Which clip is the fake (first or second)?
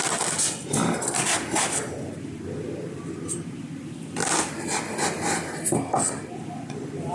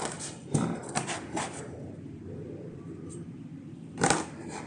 second